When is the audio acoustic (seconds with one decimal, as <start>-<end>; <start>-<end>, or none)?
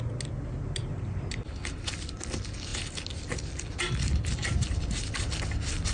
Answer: 0.0-5.9